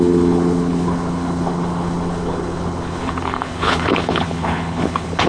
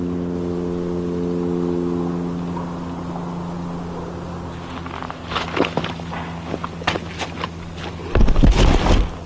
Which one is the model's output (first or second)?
first